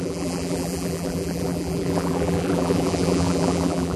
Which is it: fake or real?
fake